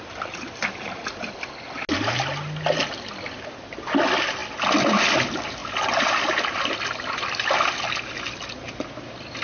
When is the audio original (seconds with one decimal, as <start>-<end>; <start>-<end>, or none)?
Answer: 0.0-9.4